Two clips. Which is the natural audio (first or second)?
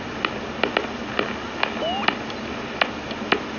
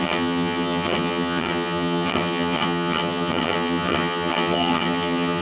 first